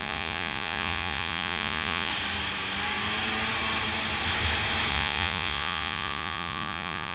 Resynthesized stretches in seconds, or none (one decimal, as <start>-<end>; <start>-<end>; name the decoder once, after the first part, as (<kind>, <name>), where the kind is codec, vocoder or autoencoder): 0.0-2.1 (vocoder, Vocos); 4.9-7.1